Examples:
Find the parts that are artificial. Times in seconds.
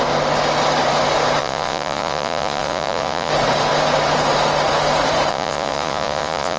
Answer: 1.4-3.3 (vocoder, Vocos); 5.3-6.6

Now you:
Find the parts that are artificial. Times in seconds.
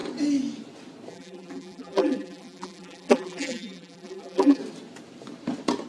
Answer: 1.1-4.6 (vocoder, BigVGAN v2)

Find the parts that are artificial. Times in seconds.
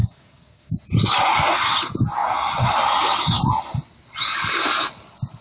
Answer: 0.0-0.7 (codec, DAC)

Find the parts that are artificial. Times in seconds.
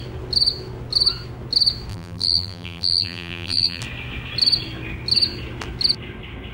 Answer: 1.9-3.8 (vocoder, BigVGAN v2)